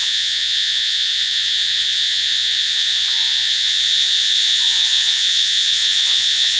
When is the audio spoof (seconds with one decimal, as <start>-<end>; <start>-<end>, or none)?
0.0-6.6